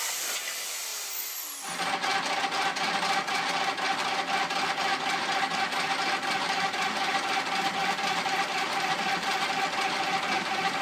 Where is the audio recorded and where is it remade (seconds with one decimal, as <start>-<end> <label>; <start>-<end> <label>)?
0.0-7.8 recorded; 7.8-9.6 remade; 9.6-10.8 recorded